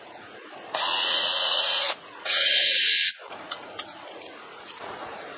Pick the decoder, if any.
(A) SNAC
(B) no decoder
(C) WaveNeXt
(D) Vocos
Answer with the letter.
D